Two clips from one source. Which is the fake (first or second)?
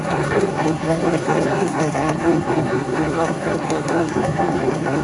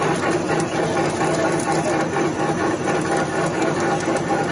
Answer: first